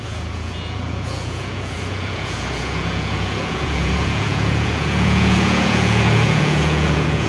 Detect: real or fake fake